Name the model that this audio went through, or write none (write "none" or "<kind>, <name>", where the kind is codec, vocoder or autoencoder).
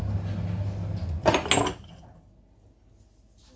none